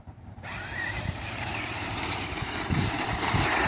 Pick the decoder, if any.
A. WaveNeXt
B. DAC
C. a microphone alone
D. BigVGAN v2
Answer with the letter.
D